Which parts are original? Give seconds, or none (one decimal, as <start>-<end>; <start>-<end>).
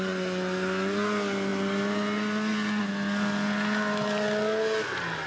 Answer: 0.0-5.3